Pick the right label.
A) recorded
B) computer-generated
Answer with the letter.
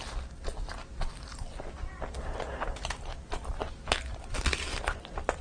A